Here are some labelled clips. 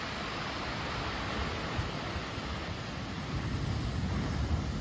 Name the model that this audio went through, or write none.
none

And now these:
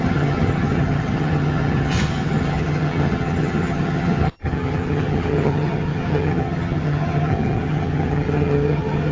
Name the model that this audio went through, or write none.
vocoder, HiFi-GAN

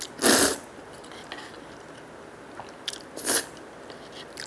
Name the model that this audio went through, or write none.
none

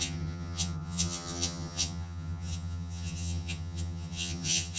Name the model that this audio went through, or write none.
vocoder, HiFi-GAN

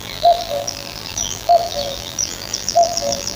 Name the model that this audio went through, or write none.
vocoder, BigVGAN v2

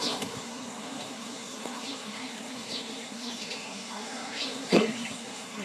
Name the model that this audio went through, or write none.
codec, SNAC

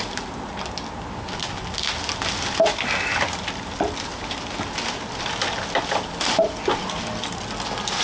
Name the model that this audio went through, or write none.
none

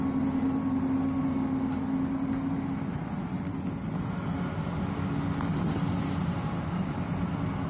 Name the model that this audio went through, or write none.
none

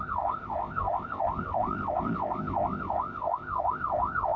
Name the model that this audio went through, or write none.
codec, ZipCodec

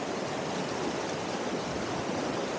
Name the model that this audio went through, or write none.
none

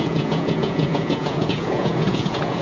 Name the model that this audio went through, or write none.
vocoder, Vocos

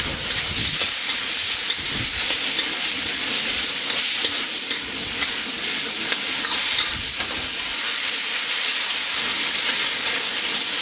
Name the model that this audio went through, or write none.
none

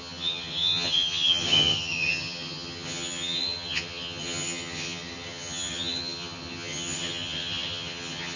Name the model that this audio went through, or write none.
vocoder, HiFi-GAN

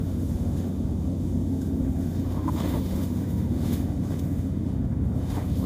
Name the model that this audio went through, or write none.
autoencoder, DAC-VAE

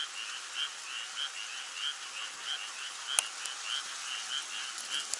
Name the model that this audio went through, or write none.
none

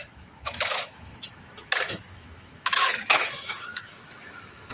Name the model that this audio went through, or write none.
autoencoder, DAC-VAE